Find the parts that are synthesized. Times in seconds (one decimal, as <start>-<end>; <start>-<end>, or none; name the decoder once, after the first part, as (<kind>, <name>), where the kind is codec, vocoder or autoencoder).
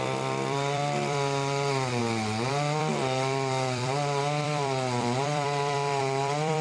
0.0-2.0 (vocoder, BigVGAN v2); 2.5-6.6